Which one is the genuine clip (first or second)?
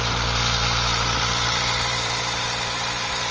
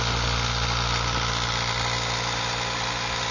second